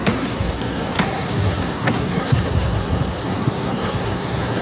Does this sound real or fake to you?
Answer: fake